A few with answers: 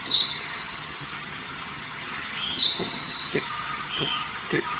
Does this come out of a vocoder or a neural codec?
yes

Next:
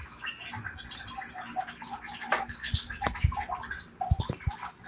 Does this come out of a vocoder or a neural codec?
no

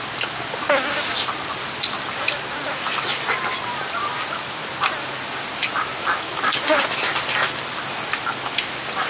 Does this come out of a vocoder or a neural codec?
no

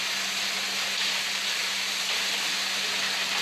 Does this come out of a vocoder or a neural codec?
no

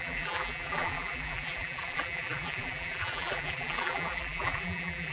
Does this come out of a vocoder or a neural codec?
yes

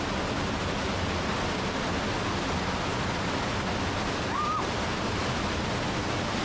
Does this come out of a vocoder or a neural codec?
no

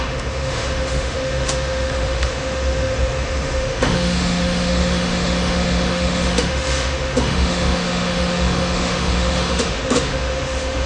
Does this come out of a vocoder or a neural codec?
yes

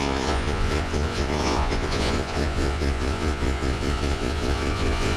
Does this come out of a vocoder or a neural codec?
yes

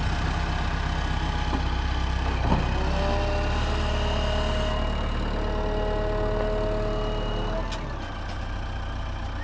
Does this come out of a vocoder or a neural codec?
no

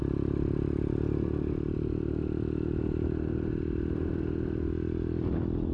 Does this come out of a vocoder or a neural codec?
no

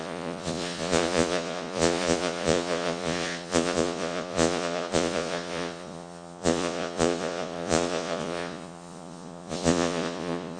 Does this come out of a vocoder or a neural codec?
yes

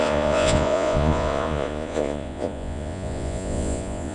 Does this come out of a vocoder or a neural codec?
yes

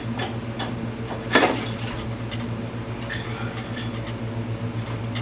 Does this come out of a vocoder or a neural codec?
no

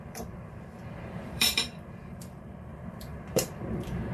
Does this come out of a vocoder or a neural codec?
yes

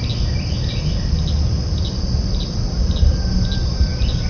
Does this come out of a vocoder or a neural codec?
no